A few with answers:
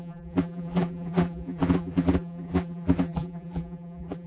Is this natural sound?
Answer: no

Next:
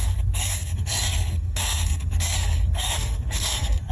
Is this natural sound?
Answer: no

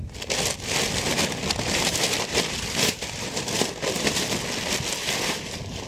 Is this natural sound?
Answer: yes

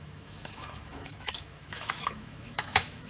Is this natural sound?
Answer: no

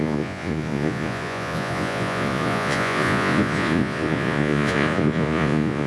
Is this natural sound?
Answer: no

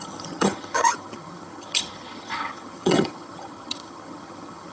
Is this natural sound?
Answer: no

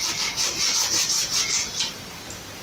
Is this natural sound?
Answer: yes